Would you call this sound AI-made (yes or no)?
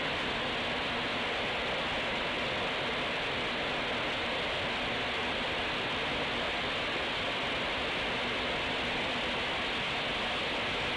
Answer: no